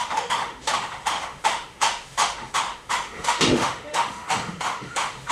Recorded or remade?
remade